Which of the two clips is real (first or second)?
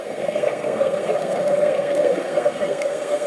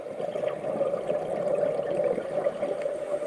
second